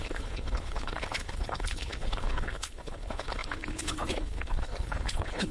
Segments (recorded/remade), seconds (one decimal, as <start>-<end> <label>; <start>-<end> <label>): 0.0-5.5 remade